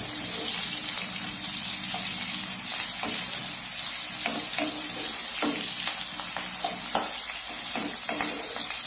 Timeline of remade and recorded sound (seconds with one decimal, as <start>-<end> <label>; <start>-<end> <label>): 0.0-8.9 recorded